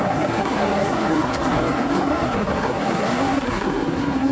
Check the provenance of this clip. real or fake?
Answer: fake